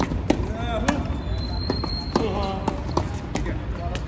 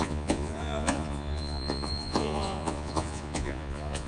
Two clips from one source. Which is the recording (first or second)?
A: first